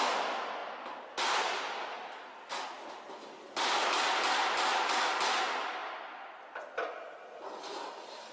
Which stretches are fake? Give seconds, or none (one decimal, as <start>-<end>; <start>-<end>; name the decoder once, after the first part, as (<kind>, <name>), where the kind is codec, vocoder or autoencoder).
none

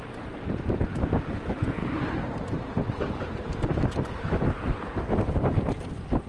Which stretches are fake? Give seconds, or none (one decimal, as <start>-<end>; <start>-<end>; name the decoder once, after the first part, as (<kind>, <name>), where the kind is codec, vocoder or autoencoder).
1.8-5.6 (vocoder, BigVGAN v2)

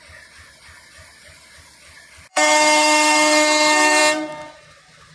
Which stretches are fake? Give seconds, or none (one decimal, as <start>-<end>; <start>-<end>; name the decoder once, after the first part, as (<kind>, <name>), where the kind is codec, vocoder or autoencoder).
2.3-4.0 (codec, SNAC)

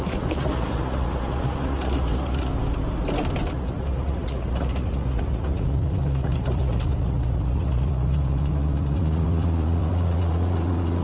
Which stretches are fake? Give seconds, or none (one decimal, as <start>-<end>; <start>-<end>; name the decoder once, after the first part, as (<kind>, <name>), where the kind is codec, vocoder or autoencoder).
0.0-2.5 (vocoder, Vocos); 3.5-11.0